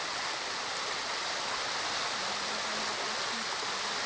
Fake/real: real